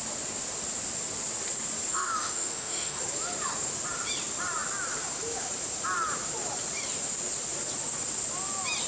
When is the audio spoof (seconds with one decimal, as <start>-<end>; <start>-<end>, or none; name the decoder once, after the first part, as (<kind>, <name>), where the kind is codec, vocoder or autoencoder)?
1.9-3.0 (autoencoder, DAC-VAE)